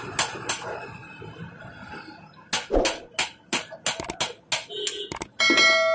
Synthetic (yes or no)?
no